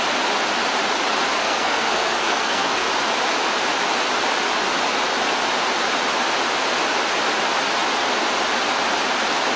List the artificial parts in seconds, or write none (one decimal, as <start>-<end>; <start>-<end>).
1.4-2.9